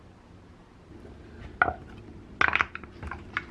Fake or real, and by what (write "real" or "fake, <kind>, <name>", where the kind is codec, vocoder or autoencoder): real